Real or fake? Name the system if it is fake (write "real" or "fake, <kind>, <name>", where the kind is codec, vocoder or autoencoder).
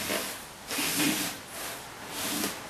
real